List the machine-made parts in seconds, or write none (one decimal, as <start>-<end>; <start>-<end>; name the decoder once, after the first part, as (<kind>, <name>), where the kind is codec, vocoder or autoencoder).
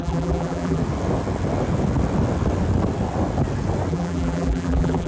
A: 0.0-0.8 (vocoder, BigVGAN v2); 3.9-5.1